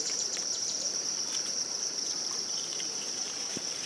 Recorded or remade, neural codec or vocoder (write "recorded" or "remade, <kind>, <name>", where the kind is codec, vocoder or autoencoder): remade, vocoder, BigVGAN v2